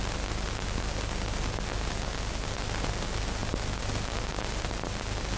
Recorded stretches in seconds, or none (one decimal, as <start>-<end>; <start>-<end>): 0.0-5.4